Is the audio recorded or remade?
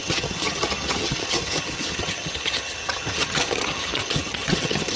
remade